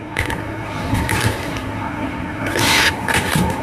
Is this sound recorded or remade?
remade